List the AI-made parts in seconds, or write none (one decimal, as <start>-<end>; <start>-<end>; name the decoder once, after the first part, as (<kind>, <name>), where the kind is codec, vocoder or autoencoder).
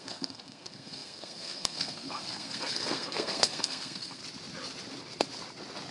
0.0-4.2 (codec, SNAC)